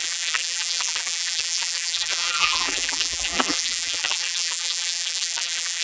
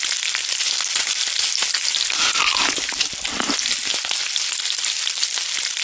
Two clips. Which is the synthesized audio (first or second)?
first